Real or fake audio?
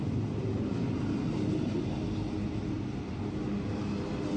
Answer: real